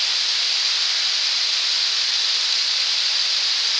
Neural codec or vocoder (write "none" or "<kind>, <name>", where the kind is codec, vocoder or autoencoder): vocoder, BigVGAN v2